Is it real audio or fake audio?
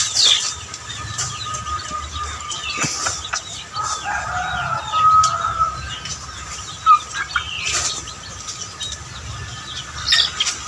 real